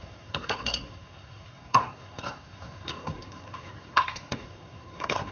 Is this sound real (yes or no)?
no